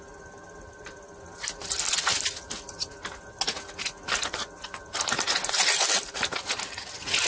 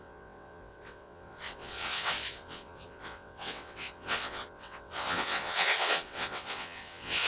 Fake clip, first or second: second